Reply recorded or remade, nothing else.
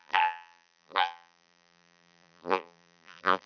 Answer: remade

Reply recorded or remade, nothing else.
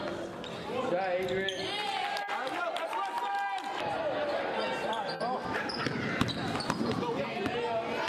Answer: recorded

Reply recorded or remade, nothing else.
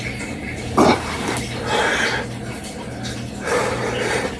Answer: recorded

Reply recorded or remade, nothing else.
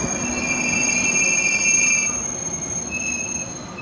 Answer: recorded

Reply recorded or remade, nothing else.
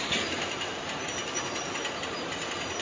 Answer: remade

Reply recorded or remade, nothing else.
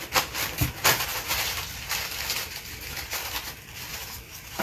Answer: remade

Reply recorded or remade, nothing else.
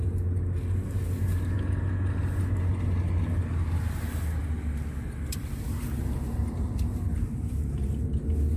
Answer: recorded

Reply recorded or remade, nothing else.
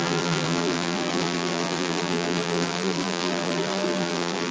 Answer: remade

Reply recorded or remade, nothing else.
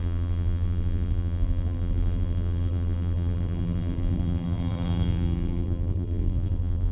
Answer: remade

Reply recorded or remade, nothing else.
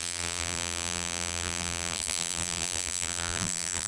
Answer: remade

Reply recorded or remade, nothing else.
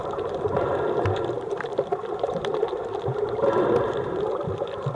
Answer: remade